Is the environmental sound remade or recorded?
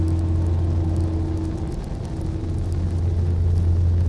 recorded